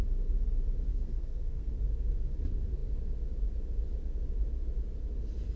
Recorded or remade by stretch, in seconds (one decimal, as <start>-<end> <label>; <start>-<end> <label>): 0.0-0.9 recorded; 0.9-1.7 remade; 1.7-5.6 recorded